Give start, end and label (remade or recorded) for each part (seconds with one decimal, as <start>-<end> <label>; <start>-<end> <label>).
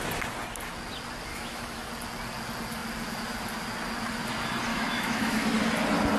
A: 0.0-1.3 recorded; 1.3-1.9 remade; 1.9-4.7 recorded; 4.7-5.5 remade; 5.5-6.2 recorded